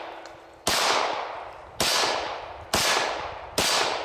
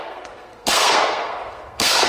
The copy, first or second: second